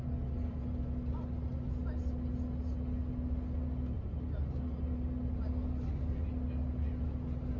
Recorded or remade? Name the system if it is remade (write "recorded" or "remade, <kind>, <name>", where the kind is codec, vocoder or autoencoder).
recorded